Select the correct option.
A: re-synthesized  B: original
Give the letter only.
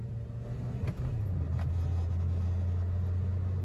B